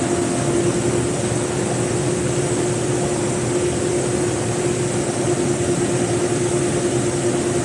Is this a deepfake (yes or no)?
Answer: no